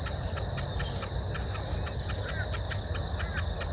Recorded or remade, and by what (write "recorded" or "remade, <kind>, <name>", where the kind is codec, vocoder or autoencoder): recorded